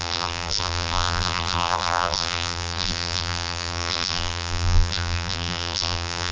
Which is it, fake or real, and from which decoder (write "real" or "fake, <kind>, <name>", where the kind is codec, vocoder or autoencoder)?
fake, vocoder, BigVGAN v2